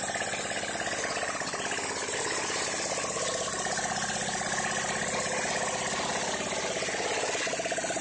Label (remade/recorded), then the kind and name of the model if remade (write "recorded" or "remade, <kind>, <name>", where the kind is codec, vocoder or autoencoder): recorded